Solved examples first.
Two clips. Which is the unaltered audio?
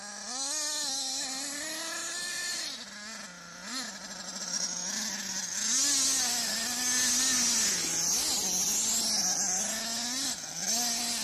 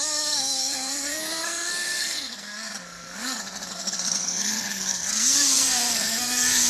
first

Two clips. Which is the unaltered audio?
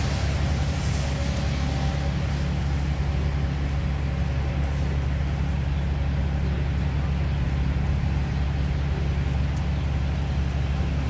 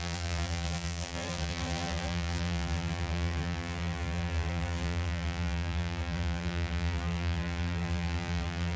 first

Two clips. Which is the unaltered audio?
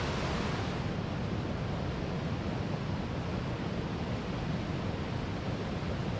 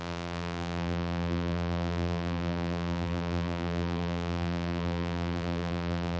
first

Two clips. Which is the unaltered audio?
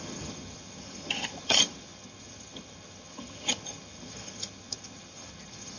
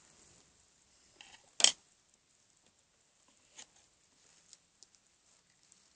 second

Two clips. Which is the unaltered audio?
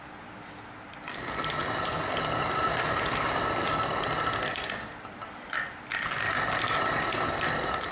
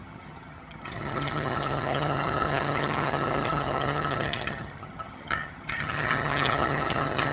first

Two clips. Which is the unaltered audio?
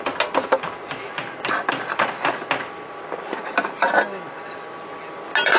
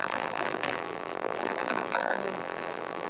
first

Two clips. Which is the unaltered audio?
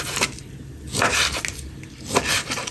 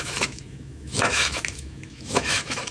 first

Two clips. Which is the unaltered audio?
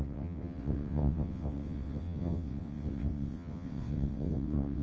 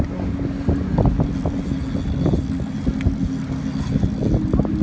second